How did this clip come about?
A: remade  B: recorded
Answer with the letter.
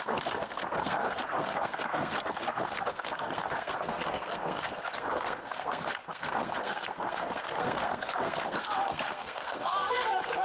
A